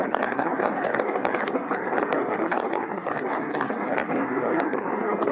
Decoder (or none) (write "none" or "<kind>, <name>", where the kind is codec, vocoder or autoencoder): codec, SNAC